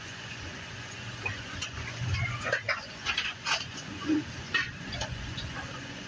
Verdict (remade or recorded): remade